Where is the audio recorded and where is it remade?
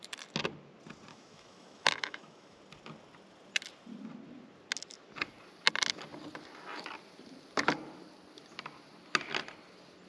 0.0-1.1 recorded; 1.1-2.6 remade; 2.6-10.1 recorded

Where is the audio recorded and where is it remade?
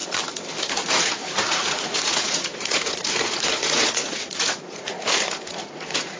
0.0-0.6 recorded; 0.6-6.2 remade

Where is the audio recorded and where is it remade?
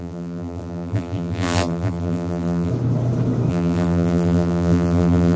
0.0-2.7 remade; 2.7-3.5 recorded; 3.5-5.4 remade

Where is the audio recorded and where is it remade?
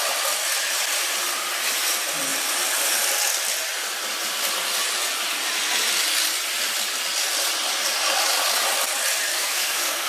0.0-9.3 recorded; 9.3-10.1 remade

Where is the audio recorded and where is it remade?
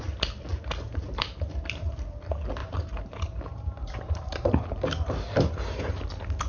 0.0-0.5 recorded; 0.5-1.9 remade; 1.9-2.6 recorded; 2.6-6.1 remade; 6.1-6.5 recorded